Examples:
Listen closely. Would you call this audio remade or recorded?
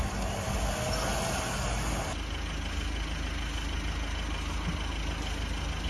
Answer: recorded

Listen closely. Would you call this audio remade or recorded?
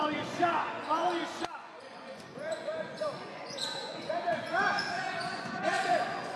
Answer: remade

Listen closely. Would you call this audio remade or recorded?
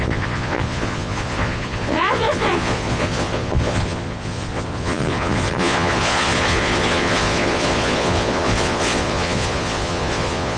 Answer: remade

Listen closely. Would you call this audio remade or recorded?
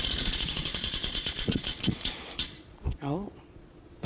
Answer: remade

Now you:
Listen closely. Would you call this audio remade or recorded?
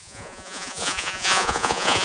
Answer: remade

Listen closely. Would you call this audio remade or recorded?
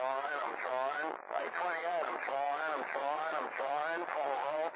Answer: remade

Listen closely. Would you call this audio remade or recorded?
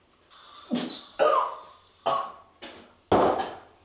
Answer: recorded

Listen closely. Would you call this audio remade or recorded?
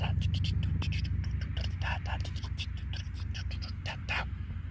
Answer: recorded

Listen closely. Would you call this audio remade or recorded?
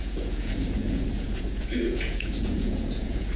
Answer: remade